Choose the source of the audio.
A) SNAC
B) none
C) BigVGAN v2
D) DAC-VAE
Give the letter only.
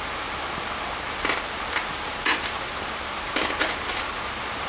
B